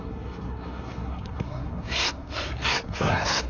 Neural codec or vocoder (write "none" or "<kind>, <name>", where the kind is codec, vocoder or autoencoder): codec, SNAC